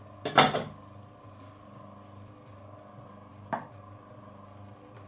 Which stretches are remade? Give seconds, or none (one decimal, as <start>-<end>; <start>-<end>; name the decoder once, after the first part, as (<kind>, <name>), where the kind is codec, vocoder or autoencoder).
none